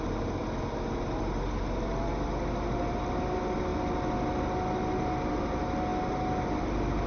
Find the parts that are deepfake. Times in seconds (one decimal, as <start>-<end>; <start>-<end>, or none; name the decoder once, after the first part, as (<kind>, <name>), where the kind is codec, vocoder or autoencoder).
none